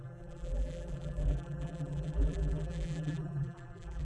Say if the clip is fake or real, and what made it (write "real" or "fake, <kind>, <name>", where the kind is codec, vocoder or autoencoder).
fake, vocoder, BigVGAN v2